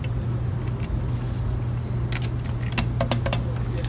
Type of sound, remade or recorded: recorded